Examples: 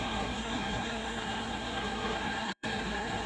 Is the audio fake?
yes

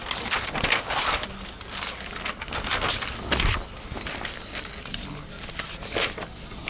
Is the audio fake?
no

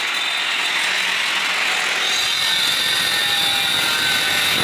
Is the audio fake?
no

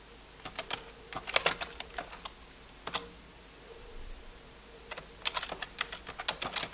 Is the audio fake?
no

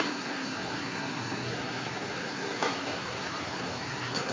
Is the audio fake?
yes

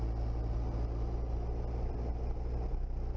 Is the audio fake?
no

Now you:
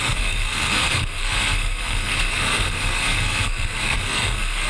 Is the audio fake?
yes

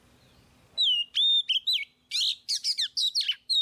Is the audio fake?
no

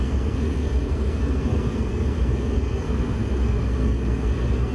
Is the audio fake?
yes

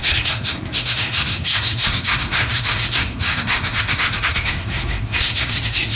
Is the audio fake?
yes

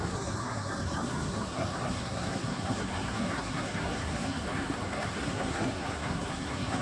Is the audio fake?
yes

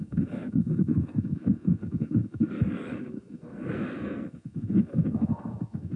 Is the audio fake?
yes